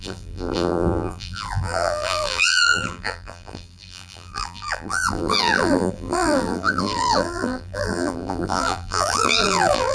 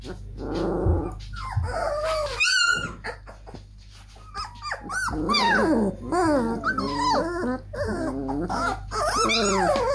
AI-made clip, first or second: first